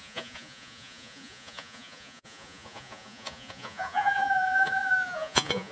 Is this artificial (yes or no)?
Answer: yes